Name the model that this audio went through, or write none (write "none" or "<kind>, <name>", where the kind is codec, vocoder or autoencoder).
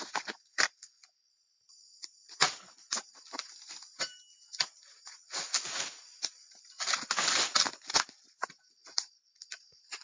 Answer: none